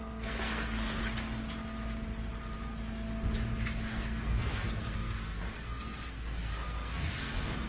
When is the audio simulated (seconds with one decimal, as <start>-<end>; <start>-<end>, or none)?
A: 0.0-1.0; 3.9-7.7